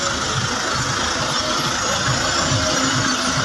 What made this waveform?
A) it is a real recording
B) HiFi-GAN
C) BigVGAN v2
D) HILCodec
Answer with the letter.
A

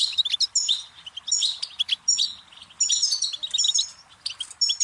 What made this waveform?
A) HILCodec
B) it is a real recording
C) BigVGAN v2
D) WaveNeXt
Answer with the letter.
B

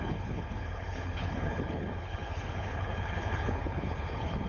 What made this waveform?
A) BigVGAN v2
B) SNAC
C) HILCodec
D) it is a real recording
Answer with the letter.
C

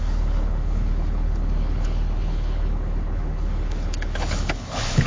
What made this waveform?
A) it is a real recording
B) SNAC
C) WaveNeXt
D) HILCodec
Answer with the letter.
D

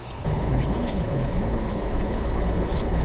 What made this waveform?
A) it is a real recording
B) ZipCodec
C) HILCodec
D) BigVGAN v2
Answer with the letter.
C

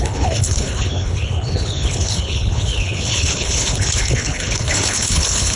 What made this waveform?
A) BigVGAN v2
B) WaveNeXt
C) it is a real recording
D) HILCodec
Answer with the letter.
D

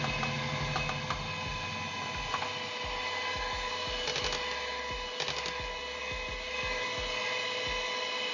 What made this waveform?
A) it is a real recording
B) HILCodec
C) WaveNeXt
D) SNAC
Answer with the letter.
A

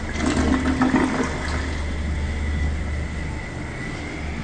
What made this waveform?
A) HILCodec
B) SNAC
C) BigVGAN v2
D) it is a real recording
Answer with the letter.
D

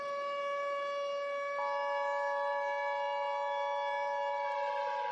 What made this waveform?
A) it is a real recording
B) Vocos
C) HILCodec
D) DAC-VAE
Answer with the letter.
A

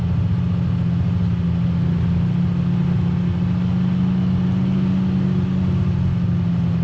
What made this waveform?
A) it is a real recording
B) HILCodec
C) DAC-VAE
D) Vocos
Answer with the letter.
A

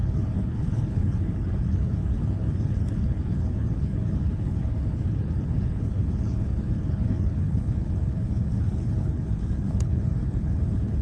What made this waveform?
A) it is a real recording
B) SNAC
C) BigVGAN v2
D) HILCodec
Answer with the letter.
D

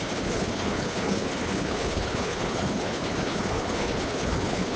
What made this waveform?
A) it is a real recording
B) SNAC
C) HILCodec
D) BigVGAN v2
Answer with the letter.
C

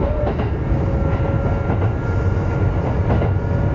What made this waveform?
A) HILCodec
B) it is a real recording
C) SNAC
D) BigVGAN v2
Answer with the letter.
B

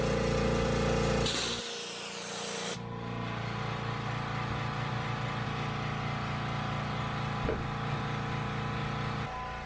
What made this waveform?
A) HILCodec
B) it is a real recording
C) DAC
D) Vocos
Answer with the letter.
B